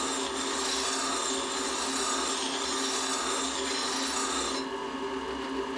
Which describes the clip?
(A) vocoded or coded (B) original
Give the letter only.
B